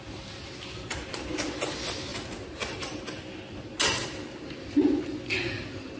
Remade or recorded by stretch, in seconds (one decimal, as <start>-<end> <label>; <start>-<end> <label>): 0.0-6.0 recorded